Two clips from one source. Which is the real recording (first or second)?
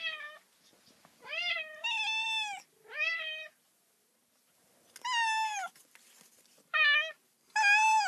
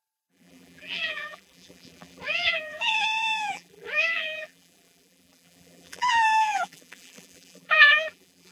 first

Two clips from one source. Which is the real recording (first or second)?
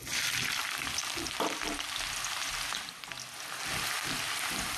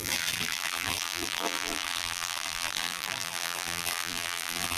first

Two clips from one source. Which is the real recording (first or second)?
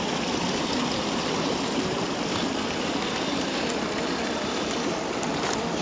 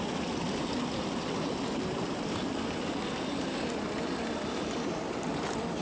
second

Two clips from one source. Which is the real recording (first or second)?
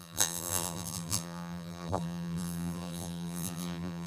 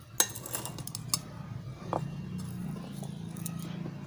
second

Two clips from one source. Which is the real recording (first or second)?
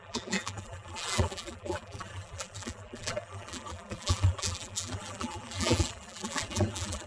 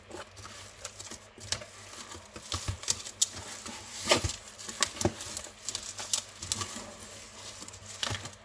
second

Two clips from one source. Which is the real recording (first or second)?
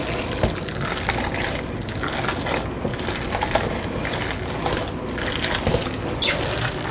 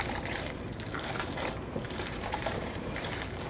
first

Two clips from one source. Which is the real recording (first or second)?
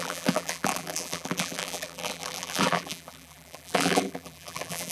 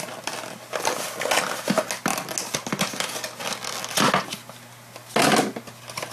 second